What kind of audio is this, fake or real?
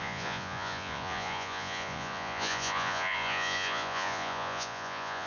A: fake